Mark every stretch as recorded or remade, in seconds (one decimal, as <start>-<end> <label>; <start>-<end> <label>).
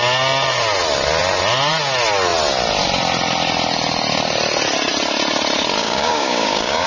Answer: 0.0-5.8 recorded; 5.8-6.9 remade